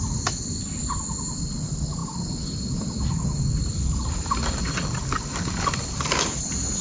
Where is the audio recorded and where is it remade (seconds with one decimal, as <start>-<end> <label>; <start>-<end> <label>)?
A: 0.0-6.8 recorded